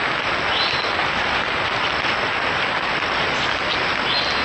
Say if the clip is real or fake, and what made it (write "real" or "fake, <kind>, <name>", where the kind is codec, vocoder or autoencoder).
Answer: real